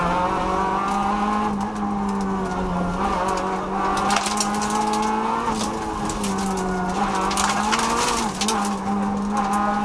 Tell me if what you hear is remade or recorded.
recorded